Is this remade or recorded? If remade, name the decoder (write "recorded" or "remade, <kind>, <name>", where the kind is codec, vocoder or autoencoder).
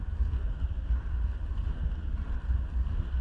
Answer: recorded